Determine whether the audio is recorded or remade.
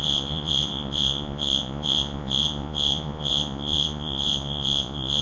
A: remade